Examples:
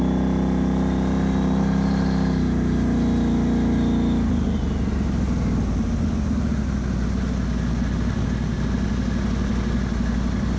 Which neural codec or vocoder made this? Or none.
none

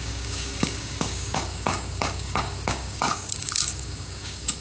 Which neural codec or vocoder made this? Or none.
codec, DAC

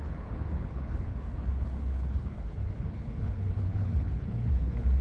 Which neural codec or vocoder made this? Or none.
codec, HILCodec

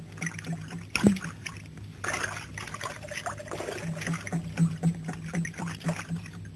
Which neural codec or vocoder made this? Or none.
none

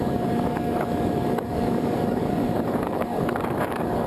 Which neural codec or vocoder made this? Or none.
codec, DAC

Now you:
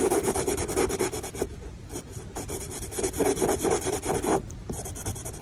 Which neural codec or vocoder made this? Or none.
vocoder, BigVGAN v2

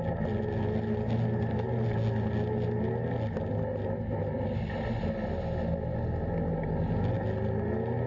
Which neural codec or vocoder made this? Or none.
none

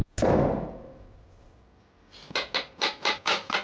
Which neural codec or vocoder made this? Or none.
none